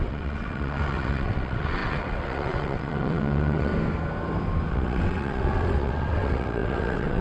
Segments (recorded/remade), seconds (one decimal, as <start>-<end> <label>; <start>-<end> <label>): 0.0-3.7 remade; 3.7-4.7 recorded; 4.7-7.2 remade